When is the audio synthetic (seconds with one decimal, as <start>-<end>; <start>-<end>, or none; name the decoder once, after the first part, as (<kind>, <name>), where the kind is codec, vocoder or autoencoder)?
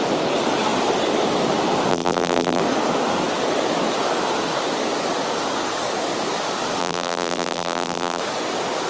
1.9-2.6 (vocoder, BigVGAN v2); 6.8-8.2